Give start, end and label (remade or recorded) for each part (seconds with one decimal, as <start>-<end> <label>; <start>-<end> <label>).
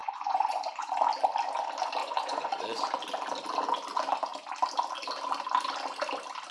0.0-0.9 remade; 0.9-2.0 recorded; 2.0-2.8 remade; 2.8-6.5 recorded